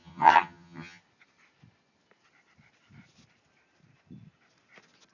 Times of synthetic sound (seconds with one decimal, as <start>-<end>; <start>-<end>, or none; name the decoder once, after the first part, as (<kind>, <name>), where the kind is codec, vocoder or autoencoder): 0.0-1.0 (vocoder, HiFi-GAN)